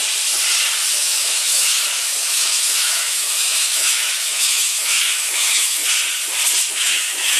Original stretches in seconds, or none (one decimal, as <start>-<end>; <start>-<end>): 0.0-0.9; 5.8-6.7

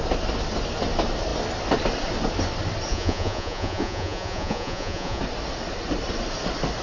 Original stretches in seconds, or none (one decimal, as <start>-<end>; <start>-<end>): 0.0-2.9; 5.2-6.8

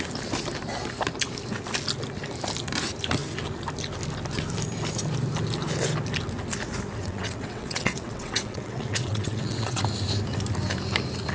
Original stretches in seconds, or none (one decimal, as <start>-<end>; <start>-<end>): 0.0-7.0; 9.8-11.3